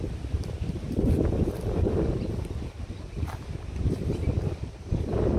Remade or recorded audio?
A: recorded